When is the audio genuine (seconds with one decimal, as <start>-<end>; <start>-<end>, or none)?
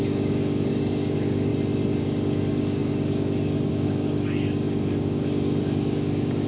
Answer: 1.5-2.0